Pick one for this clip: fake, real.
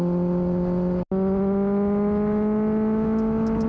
real